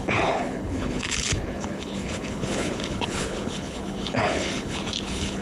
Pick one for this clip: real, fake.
fake